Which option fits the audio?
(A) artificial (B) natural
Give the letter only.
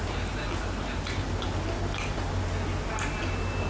B